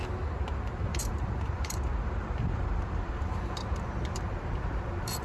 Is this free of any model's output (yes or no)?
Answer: no